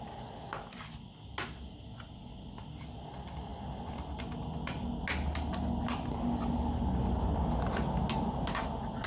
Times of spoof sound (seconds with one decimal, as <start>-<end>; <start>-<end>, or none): 3.5-4.2